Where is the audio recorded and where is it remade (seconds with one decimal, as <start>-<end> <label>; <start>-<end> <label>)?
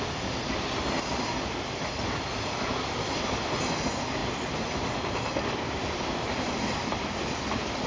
0.0-1.1 recorded; 1.1-3.6 remade; 3.6-4.2 recorded; 4.2-7.3 remade; 7.3-7.9 recorded